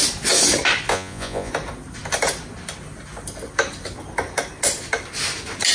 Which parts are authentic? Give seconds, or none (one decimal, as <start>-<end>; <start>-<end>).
0.0-0.9; 1.5-5.7